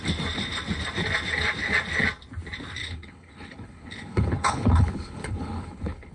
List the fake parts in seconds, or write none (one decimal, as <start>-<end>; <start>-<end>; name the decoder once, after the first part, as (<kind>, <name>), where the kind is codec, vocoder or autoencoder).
2.8-6.1 (codec, HILCodec)